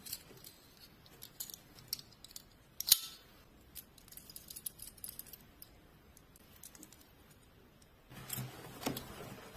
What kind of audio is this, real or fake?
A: real